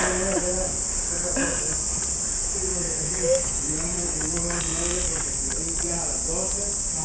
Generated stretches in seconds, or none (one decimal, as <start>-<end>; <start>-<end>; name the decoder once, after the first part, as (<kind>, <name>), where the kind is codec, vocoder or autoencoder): 2.7-4.6 (autoencoder, DAC-VAE)